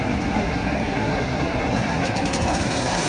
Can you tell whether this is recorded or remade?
remade